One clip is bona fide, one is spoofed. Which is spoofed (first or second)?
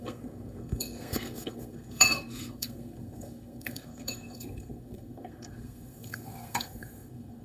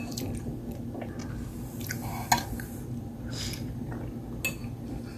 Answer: first